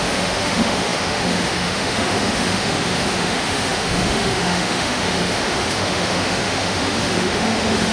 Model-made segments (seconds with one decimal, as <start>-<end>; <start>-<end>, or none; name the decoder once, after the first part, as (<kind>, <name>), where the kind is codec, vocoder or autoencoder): 0.0-7.9 (autoencoder, DAC-VAE)